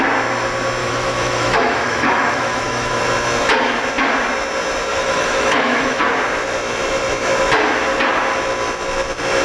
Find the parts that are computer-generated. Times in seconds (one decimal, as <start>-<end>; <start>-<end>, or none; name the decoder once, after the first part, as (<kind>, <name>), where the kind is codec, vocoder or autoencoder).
0.8-3.0 (autoencoder, DAC-VAE); 4.9-6.0